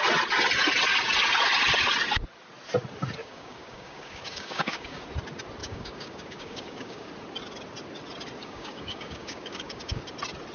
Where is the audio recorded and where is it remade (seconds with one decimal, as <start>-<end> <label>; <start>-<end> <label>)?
0.0-3.2 recorded; 3.2-5.0 remade; 5.0-5.6 recorded; 5.6-7.1 remade; 7.1-8.4 recorded; 8.4-10.0 remade; 10.0-10.5 recorded